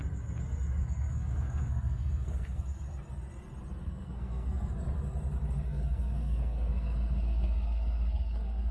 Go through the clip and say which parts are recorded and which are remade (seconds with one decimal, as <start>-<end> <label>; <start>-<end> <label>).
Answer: 0.0-0.8 recorded; 0.8-2.6 remade; 2.6-3.8 recorded; 3.8-4.7 remade; 4.7-5.7 recorded; 5.7-8.7 remade